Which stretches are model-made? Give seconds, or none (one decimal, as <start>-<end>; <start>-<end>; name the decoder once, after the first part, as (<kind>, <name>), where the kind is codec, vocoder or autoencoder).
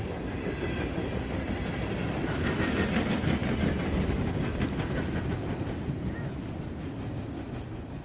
3.4-5.2 (vocoder, BigVGAN v2)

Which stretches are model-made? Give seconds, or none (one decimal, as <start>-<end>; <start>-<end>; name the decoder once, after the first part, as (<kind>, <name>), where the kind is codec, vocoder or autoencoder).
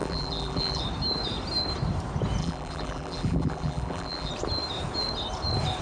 0.0-0.8 (vocoder, BigVGAN v2); 2.4-4.3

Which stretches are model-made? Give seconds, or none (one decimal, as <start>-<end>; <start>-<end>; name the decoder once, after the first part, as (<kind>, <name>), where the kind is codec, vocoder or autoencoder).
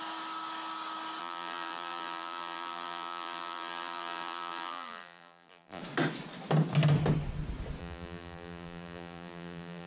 1.2-5.8 (vocoder, BigVGAN v2); 7.8-9.9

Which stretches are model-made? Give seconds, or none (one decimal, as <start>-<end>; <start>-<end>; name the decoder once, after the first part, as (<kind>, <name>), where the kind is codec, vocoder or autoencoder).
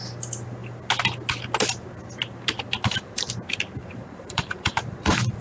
3.8-5.4 (vocoder, BigVGAN v2)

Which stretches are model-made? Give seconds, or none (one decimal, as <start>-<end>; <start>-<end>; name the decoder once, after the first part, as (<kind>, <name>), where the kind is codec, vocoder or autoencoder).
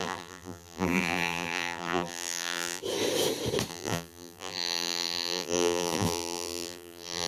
0.0-2.8 (vocoder, BigVGAN v2); 3.7-7.3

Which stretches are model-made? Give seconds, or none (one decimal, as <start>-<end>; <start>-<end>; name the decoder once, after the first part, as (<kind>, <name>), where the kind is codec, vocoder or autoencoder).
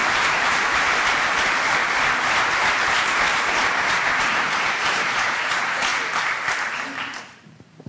0.0-1.8 (vocoder, BigVGAN v2); 2.8-5.9; 7.5-7.9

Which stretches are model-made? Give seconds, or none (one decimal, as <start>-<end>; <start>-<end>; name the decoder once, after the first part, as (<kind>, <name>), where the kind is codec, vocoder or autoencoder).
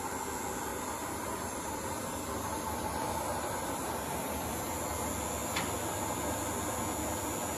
0.7-4.3 (vocoder, BigVGAN v2)